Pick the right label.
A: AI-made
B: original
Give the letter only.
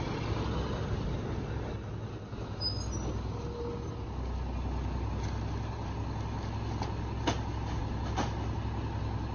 B